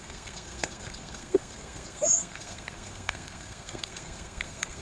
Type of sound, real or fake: fake